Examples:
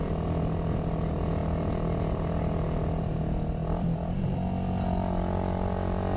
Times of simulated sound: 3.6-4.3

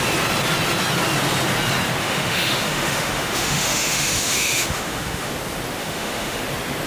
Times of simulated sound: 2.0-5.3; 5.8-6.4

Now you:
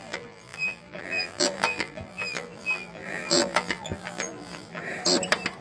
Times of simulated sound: 0.0-4.8

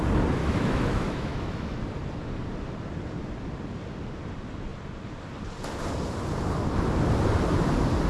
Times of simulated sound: 0.4-1.8

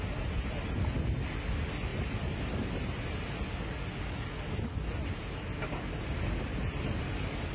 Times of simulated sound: none

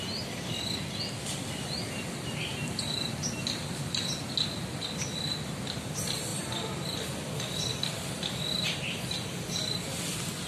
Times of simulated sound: none

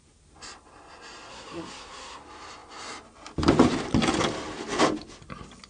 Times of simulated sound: 1.3-2.2